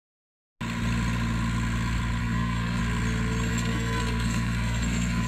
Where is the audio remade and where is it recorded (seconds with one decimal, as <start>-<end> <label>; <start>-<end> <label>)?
0.0-2.2 recorded; 2.2-2.8 remade; 2.8-3.5 recorded; 3.5-5.3 remade